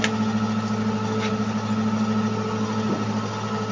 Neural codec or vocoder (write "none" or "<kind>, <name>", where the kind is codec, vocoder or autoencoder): none